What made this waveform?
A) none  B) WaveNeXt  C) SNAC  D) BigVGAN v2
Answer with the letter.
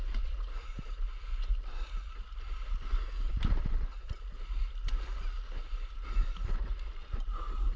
A